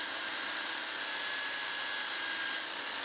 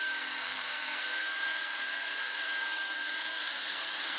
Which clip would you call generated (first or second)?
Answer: second